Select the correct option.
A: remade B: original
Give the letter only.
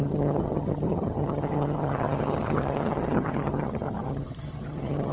A